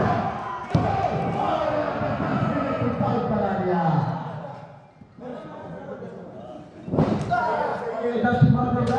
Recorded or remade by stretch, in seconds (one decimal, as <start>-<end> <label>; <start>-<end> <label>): 0.0-2.3 recorded; 2.3-3.2 remade; 3.2-5.3 recorded; 5.3-6.0 remade; 6.0-7.7 recorded; 7.7-9.0 remade